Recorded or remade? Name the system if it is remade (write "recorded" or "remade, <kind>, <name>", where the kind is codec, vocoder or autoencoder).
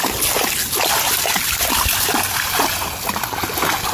recorded